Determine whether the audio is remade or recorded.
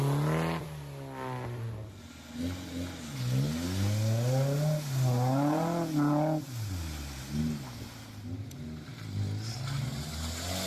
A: recorded